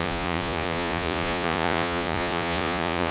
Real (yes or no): no